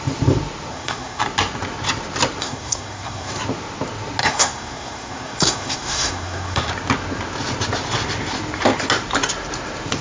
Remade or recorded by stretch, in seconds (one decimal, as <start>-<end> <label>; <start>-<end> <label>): 0.0-0.7 recorded; 0.7-1.2 remade; 1.2-2.4 recorded; 2.4-3.3 remade; 3.3-4.2 recorded; 4.2-6.7 remade; 6.7-10.0 recorded

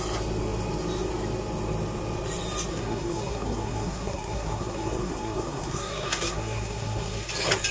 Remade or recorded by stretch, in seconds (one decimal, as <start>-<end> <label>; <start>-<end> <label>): 0.0-2.7 recorded; 2.7-7.3 remade; 7.3-7.7 recorded